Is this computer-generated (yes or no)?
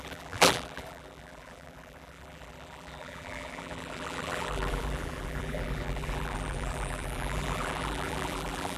yes